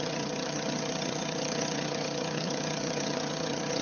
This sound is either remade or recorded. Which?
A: remade